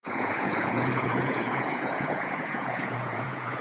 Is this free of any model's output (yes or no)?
no